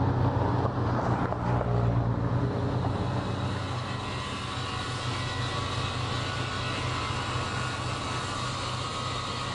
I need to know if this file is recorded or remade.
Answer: recorded